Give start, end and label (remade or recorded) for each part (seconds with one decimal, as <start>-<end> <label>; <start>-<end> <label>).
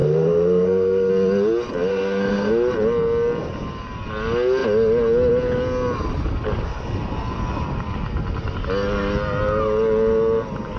0.0-1.1 remade; 1.1-1.9 recorded; 1.9-2.5 remade; 2.5-10.8 recorded